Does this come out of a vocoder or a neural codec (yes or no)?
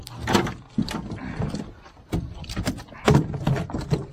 no